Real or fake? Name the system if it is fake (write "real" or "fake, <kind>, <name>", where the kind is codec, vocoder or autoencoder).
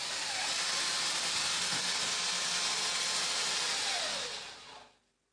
real